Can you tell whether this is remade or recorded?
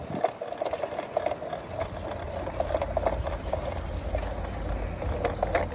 recorded